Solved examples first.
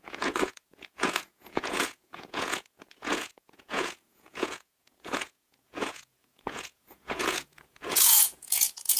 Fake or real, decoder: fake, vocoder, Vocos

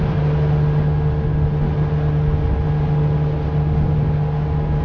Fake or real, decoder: real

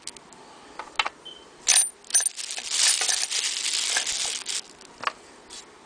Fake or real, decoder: real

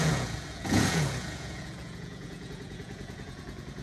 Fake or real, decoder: fake, vocoder, Vocos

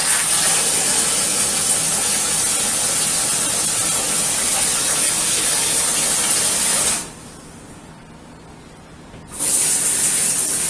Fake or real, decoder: real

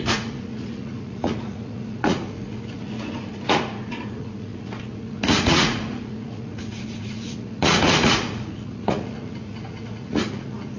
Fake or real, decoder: fake, vocoder, Vocos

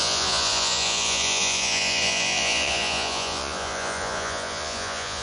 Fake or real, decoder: fake, vocoder, Vocos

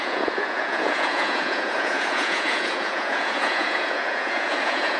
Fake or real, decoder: fake, vocoder, Vocos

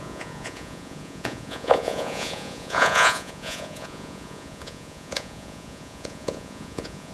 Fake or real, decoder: fake, vocoder, Vocos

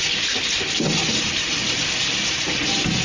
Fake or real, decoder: real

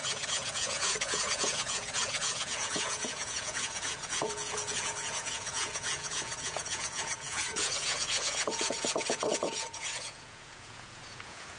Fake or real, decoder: fake, vocoder, Vocos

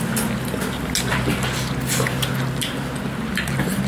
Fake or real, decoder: real